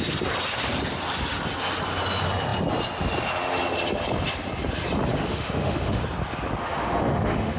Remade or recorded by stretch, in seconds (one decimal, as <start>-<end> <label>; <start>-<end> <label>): 0.0-5.1 recorded; 5.1-6.0 remade; 6.0-6.6 recorded; 6.6-7.6 remade

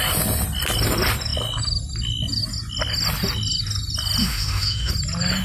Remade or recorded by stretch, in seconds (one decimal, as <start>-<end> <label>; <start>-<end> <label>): 0.0-4.2 recorded; 4.2-4.9 remade; 4.9-5.4 recorded